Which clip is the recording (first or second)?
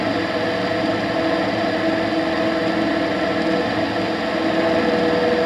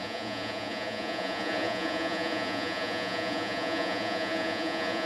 first